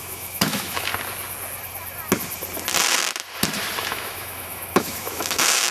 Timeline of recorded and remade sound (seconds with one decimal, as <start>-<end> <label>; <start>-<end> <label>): 0.0-0.9 remade; 0.9-3.8 recorded; 3.8-5.7 remade